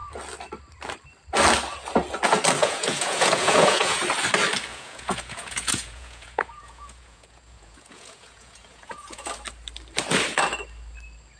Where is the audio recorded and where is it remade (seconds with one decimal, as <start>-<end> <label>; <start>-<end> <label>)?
0.0-2.6 recorded; 2.6-4.0 remade; 4.0-4.7 recorded; 4.7-9.3 remade; 9.3-11.4 recorded